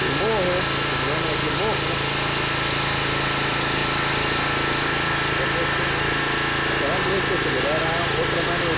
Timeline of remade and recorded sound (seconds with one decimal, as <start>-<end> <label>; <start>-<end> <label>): 0.0-8.8 recorded